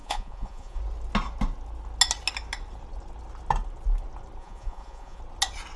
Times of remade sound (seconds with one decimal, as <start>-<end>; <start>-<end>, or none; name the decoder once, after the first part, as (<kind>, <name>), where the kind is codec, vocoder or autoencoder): 0.0-0.8 (vocoder, Vocos); 4.4-5.2